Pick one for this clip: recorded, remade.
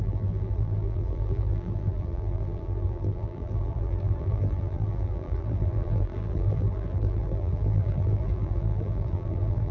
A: remade